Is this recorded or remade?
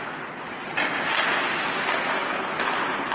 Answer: recorded